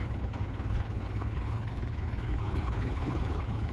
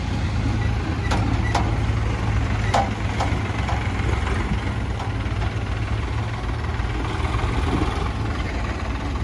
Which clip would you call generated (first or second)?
first